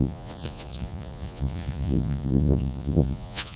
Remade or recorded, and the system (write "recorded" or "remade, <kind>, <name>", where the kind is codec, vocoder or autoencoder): remade, vocoder, Vocos